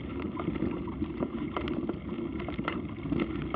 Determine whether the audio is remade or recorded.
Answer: recorded